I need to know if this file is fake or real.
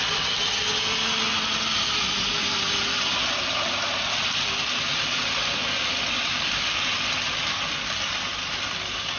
real